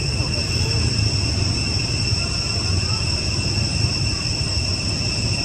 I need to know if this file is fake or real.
real